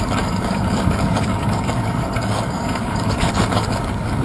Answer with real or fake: fake